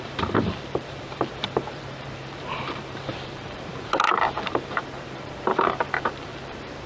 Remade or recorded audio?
remade